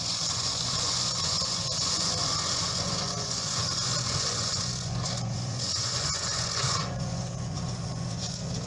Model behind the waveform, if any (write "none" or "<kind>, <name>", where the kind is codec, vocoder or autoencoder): vocoder, Vocos